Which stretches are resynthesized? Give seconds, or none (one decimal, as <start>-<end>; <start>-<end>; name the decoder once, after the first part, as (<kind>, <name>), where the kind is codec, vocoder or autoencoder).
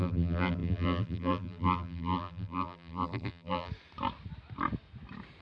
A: 0.0-3.7 (vocoder, BigVGAN v2)